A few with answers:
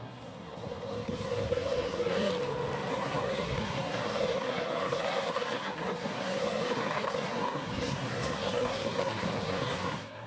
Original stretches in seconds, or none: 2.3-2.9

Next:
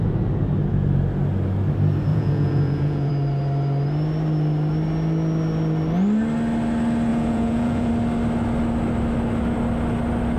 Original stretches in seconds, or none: 0.0-2.1; 3.1-7.1; 7.9-10.4

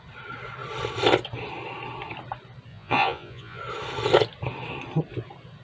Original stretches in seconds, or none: 0.0-2.7; 3.6-5.6

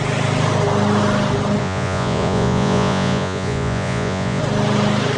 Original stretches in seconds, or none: 0.0-1.6; 4.4-5.2

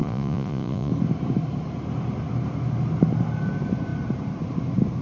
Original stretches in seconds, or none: 0.9-5.0

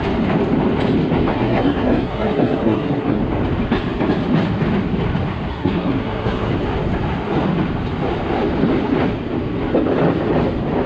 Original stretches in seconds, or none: 0.0-1.3; 3.2-5.5; 6.5-10.9